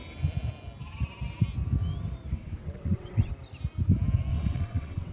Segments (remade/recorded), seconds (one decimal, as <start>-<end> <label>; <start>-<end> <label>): 0.0-2.3 recorded; 2.3-3.3 remade; 3.3-4.3 recorded; 4.3-5.1 remade